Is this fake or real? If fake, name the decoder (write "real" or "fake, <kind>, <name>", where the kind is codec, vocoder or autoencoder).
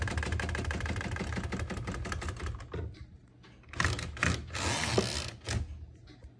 real